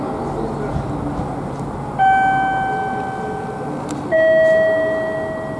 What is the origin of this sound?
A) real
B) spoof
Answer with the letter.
A